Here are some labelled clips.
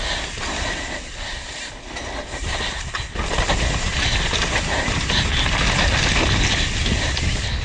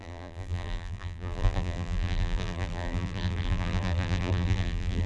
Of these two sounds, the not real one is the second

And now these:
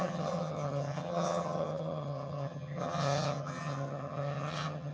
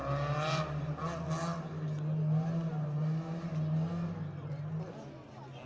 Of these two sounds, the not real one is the first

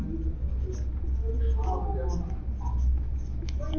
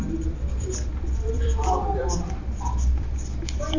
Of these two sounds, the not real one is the second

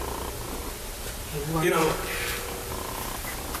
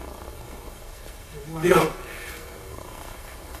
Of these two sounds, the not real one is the second